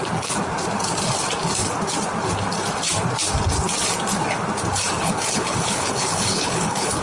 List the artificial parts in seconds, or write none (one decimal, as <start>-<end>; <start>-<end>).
5.0-7.0